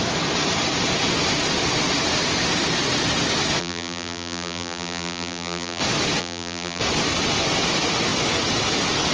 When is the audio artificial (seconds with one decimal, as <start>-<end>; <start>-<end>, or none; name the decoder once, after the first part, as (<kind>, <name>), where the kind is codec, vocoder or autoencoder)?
3.6-5.8 (vocoder, BigVGAN v2); 6.2-6.8